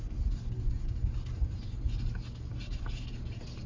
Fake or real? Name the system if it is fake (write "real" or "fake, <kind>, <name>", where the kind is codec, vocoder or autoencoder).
real